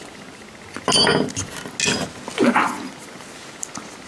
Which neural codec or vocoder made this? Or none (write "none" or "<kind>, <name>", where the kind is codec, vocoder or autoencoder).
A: none